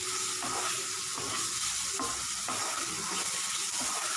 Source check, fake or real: real